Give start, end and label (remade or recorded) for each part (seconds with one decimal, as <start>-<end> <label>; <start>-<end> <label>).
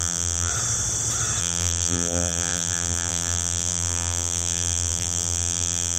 0.0-0.5 remade; 0.5-1.4 recorded; 1.4-6.0 remade